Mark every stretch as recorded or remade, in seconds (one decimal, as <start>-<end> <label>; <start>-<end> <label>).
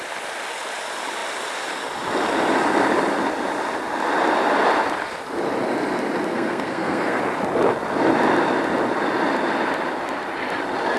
0.0-6.3 recorded; 6.3-7.2 remade; 7.2-11.0 recorded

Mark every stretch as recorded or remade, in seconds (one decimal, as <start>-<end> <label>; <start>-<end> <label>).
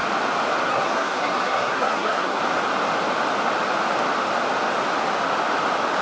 0.0-0.7 recorded; 0.7-2.4 remade; 2.4-6.0 recorded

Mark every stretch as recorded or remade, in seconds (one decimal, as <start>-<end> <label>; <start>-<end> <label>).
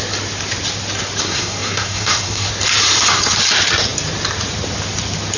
0.0-1.2 recorded; 1.2-2.5 remade; 2.5-5.4 recorded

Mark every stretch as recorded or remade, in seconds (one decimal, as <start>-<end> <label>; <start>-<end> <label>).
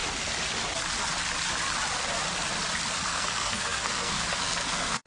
0.0-3.1 recorded; 3.1-5.1 remade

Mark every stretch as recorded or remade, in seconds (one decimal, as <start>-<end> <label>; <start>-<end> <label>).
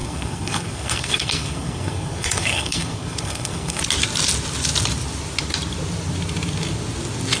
0.0-3.8 remade; 3.8-7.4 recorded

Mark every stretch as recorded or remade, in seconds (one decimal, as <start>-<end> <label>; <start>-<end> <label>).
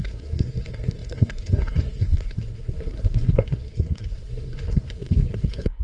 0.0-5.8 remade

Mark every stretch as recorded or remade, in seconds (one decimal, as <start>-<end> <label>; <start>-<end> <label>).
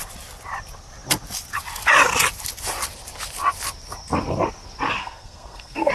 0.0-5.0 recorded; 5.0-5.9 remade